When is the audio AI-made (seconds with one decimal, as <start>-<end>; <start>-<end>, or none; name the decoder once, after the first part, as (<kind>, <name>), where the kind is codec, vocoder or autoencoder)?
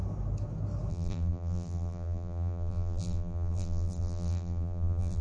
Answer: 0.9-5.2 (vocoder, BigVGAN v2)